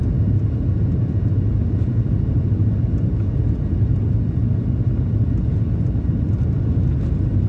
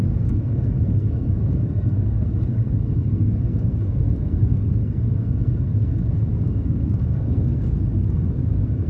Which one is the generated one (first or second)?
second